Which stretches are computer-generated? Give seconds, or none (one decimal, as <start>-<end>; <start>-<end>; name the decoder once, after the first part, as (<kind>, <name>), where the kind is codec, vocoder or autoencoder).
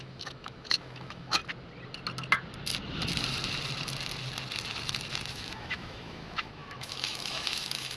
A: 0.0-1.4 (autoencoder, DAC-VAE); 5.3-8.0